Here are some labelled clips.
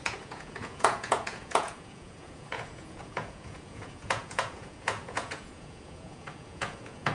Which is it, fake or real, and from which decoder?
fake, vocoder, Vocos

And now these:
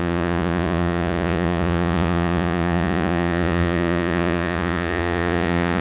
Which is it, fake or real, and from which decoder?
fake, vocoder, Vocos